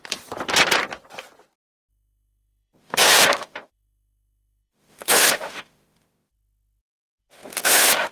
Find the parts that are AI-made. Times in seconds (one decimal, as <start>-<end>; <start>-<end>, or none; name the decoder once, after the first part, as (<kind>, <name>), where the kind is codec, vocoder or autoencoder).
1.9-6.8 (autoencoder, DAC-VAE); 7.2-8.1